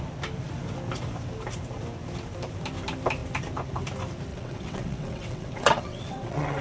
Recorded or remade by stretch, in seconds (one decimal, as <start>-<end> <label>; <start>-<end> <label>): 0.0-4.3 recorded; 4.3-6.6 remade